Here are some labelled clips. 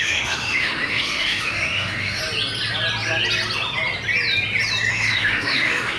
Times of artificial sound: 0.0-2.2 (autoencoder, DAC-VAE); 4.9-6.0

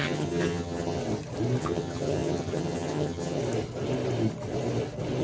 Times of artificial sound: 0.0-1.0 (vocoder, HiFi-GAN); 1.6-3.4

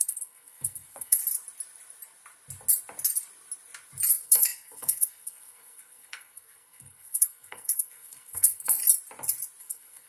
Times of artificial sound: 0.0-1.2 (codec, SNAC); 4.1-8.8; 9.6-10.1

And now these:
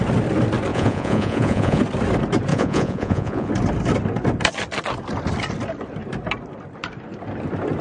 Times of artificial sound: 0.7-1.8 (vocoder, Vocos); 2.5-3.5

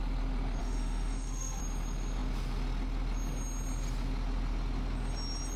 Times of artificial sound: 0.6-1.6 (autoencoder, DAC-VAE)

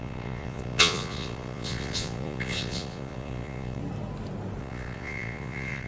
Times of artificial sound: 0.0-3.8 (vocoder, Vocos); 4.6-5.9

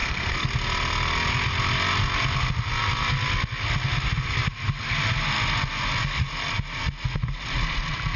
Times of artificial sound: 0.0-0.5 (codec, SNAC)

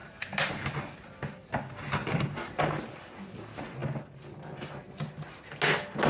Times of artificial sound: 0.0-0.5 (vocoder, BigVGAN v2); 2.0-2.6